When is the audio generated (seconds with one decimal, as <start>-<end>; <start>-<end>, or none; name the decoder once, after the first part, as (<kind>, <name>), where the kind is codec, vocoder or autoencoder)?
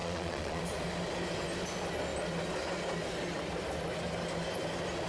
0.0-0.6 (vocoder, Vocos)